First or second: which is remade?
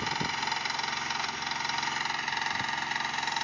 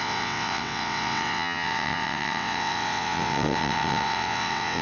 second